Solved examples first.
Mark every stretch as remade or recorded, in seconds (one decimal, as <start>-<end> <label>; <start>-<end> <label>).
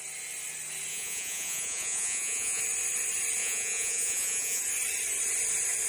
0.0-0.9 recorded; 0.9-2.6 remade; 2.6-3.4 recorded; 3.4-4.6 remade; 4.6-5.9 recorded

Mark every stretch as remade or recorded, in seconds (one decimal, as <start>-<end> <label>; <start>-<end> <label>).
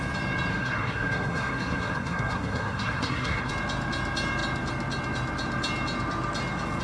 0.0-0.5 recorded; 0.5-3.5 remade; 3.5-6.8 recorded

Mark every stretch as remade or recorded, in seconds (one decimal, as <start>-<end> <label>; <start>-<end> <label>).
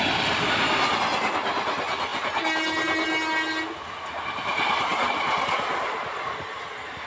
0.0-7.1 recorded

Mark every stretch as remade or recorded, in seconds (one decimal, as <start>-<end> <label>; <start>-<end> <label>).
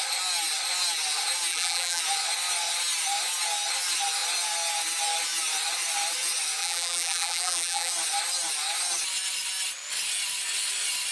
0.0-1.5 recorded; 1.5-2.0 remade; 2.0-6.6 recorded; 6.6-7.9 remade; 7.9-11.1 recorded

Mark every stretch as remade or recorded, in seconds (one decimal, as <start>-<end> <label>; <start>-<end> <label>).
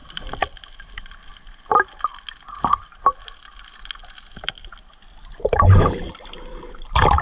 0.0-0.8 recorded; 0.8-1.3 remade; 1.3-5.4 recorded; 5.4-7.2 remade